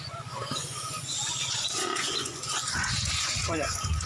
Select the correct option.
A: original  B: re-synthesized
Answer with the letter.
B